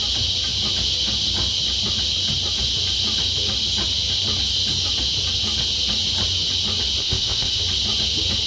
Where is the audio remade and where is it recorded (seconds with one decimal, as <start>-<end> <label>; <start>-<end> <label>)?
0.0-7.0 recorded; 7.0-7.6 remade; 7.6-8.5 recorded